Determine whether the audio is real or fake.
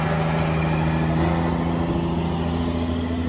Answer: real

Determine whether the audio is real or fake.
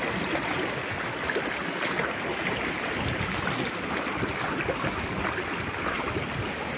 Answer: real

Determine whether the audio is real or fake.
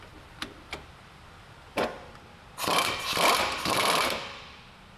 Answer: real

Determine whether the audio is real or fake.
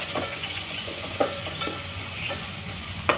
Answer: fake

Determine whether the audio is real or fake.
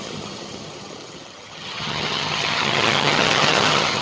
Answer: fake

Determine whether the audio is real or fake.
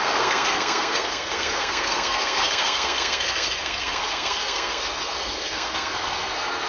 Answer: fake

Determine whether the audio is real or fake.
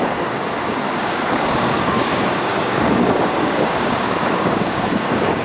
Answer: fake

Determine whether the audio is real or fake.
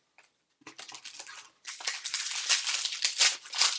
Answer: fake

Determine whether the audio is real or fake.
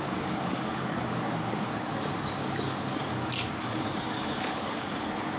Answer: fake